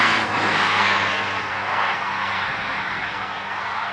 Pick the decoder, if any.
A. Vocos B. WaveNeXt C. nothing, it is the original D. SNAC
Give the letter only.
D